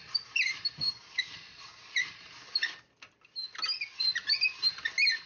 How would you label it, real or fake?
real